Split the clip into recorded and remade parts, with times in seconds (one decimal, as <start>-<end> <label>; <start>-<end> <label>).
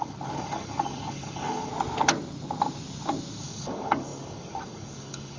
0.0-1.7 remade; 1.7-3.4 recorded; 3.4-5.4 remade